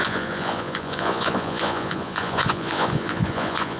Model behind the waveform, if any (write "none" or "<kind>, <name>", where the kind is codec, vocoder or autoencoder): vocoder, Vocos